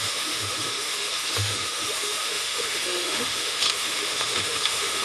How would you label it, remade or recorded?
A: remade